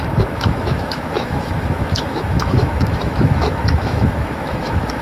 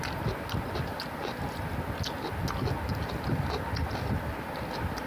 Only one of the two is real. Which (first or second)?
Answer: second